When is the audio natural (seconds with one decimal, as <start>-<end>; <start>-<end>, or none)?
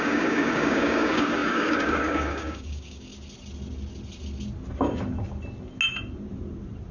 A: 3.1-6.9